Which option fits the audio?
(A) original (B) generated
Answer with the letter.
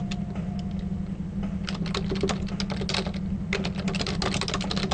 A